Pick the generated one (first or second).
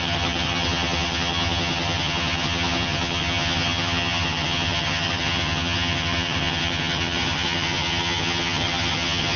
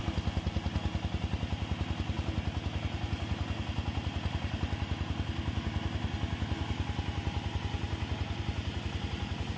first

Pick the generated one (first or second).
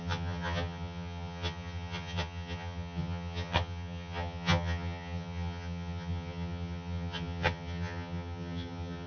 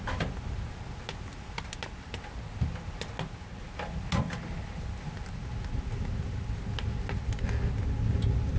first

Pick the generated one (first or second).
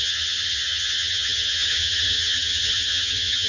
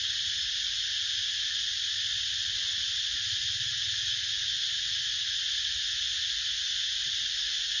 first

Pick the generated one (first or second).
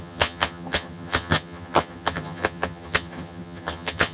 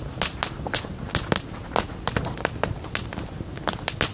first